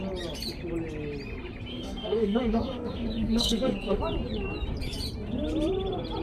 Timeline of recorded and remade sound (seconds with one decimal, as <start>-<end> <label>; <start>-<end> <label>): 0.0-1.7 recorded; 1.7-4.0 remade; 4.0-6.2 recorded